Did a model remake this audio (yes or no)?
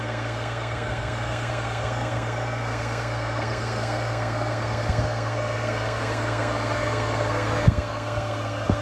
yes